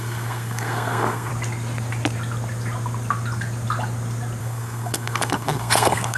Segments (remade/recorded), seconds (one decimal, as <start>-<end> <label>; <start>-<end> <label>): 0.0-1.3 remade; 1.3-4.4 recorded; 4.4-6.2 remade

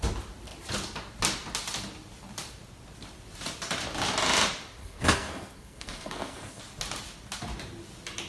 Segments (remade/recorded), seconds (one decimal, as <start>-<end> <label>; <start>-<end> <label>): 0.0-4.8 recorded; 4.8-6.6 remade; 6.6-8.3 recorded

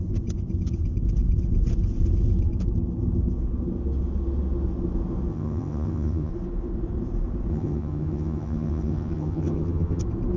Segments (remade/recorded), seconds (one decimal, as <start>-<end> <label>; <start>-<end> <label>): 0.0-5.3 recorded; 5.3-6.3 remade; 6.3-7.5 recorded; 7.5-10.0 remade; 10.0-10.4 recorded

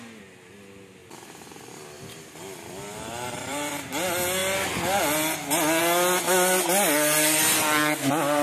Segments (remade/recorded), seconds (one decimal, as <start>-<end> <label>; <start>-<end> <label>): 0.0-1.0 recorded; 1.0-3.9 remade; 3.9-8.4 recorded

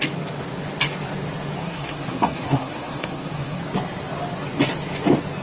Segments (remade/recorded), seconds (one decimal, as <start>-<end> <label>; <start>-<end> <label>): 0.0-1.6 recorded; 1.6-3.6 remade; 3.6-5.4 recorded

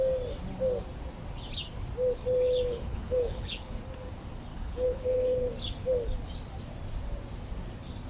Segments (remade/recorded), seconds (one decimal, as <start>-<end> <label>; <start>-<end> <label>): 0.0-2.7 recorded; 2.7-3.8 remade; 3.8-4.5 recorded; 4.5-5.5 remade; 5.5-8.1 recorded

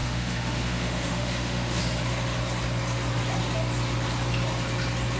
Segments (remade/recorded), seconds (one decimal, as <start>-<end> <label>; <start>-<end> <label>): 0.0-1.8 remade; 1.8-5.2 recorded